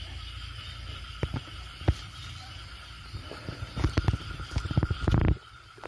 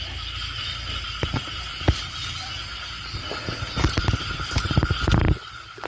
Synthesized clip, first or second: first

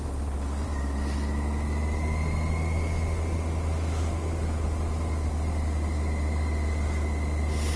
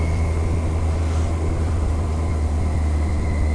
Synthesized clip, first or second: second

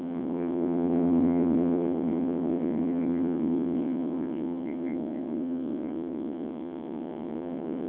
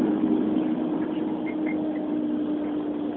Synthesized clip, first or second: first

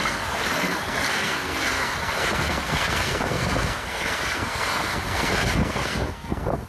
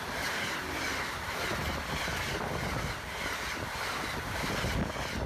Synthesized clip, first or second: first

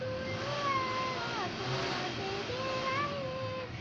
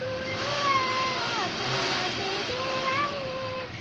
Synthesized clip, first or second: second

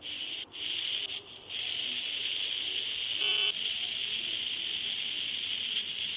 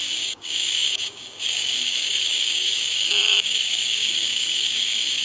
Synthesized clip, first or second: second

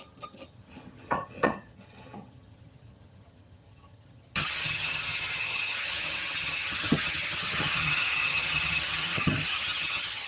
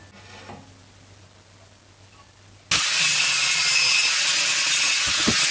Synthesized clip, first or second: first